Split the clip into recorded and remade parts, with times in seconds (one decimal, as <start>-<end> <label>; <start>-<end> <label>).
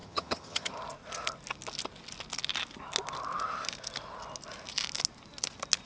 0.0-0.7 remade; 0.7-5.9 recorded